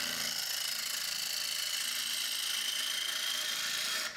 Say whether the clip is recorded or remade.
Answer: remade